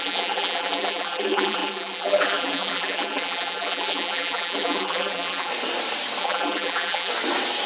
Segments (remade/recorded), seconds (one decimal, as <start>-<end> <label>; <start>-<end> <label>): 0.0-5.5 remade; 5.5-6.2 recorded; 6.2-7.1 remade; 7.1-7.7 recorded